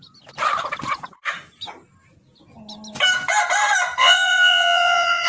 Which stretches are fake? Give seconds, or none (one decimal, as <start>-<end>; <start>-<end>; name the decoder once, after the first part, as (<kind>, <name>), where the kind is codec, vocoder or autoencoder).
4.0-5.3 (vocoder, Vocos)